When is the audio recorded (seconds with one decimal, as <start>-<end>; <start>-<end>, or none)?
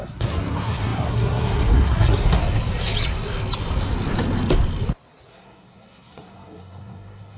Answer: 2.4-5.3